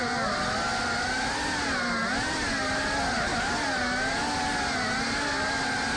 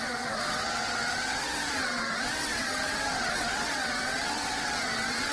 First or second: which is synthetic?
second